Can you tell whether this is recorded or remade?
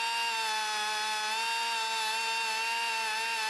recorded